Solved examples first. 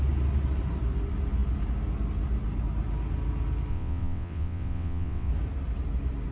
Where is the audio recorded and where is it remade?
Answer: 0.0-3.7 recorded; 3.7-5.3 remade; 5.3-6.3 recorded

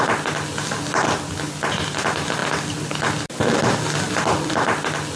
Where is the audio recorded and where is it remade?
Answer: 0.0-5.2 recorded

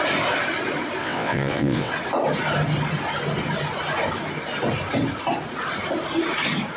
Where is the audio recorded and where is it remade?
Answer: 0.0-1.0 recorded; 1.0-1.9 remade; 1.9-6.8 recorded